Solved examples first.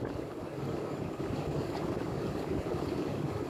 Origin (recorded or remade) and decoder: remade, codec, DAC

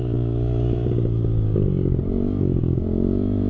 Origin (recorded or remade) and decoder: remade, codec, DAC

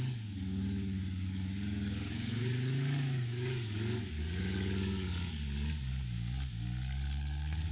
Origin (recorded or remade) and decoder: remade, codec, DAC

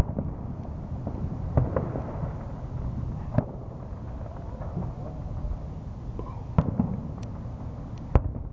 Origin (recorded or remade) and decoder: recorded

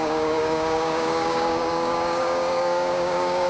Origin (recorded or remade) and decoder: remade, codec, DAC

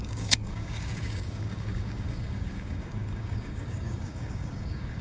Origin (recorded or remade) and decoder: remade, codec, DAC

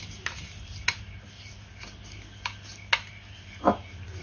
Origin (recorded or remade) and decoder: recorded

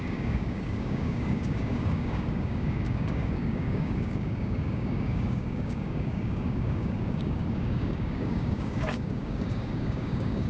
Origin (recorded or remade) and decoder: remade, codec, DAC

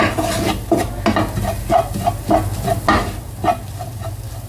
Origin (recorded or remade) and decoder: recorded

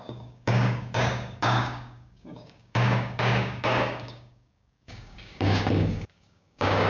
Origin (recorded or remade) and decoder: remade, codec, DAC